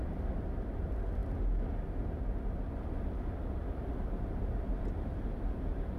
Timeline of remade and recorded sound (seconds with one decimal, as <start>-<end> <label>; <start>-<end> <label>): 0.0-6.0 recorded